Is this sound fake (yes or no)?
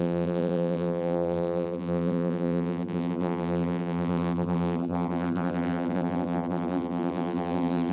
yes